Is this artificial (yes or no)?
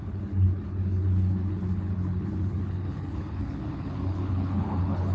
yes